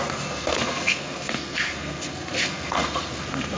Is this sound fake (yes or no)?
yes